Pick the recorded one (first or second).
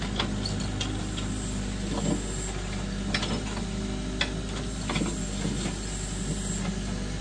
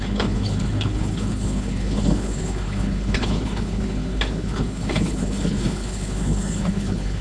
first